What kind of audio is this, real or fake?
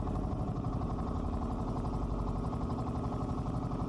real